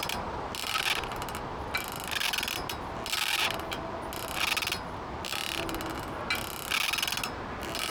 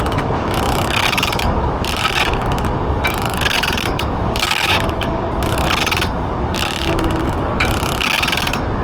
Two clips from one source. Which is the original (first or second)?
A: first